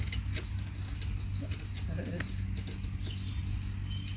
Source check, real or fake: real